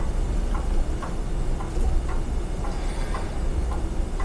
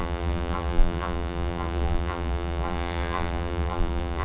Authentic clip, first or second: first